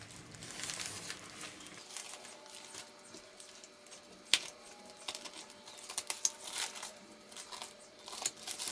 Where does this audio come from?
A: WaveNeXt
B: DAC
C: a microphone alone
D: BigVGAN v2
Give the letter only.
C